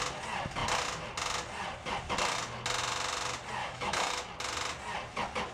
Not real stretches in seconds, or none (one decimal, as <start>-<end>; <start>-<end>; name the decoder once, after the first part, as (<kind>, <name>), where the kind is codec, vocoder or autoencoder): 3.6-4.2 (autoencoder, DAC-VAE)